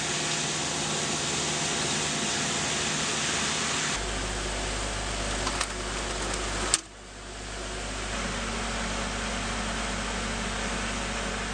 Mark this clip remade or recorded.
recorded